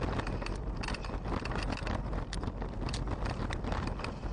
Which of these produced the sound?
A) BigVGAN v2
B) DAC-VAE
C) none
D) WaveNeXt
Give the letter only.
C